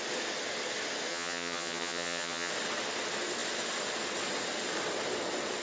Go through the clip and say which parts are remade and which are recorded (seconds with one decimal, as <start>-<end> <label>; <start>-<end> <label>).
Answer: 0.0-1.1 recorded; 1.1-2.5 remade; 2.5-5.6 recorded

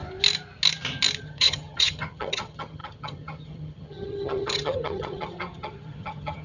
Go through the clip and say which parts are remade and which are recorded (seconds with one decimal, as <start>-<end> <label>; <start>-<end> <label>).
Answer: 0.0-1.2 recorded; 1.2-6.4 remade

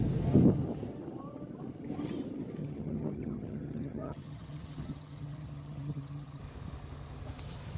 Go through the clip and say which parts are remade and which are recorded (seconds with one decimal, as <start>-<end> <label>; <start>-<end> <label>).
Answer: 0.0-2.6 recorded; 2.6-6.4 remade; 6.4-7.8 recorded

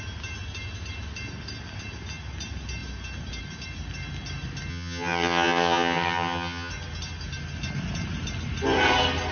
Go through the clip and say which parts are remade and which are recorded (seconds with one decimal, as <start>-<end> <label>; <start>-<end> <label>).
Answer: 0.0-4.7 recorded; 4.7-6.7 remade; 6.7-9.3 recorded

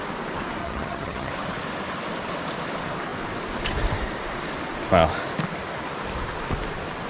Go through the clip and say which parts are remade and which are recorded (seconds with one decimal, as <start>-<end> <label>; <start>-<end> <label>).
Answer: 0.0-0.6 recorded; 0.6-1.3 remade; 1.3-7.1 recorded